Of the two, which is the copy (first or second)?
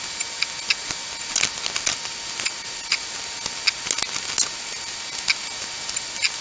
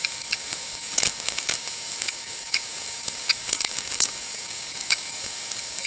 second